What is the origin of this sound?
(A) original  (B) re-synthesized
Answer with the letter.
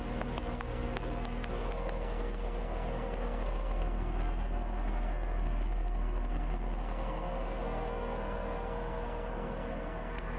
B